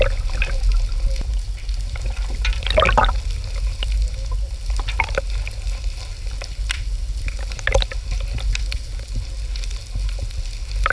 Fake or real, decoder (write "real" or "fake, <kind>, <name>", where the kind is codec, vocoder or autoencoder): real